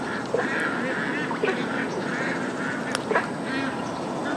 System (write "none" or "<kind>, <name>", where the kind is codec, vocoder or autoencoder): none